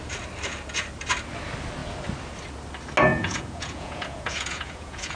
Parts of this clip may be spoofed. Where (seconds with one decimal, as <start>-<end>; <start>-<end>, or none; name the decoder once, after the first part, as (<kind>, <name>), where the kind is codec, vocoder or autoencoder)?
3.1-5.2 (vocoder, Vocos)